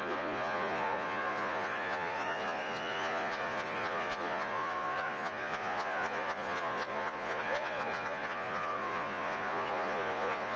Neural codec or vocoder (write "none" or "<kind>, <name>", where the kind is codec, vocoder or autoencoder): vocoder, Vocos